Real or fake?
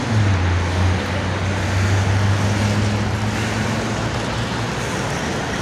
real